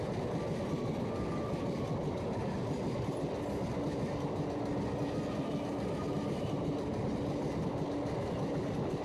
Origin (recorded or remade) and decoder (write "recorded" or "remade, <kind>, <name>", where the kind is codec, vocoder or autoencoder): recorded